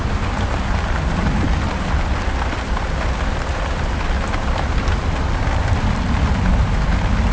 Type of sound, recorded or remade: recorded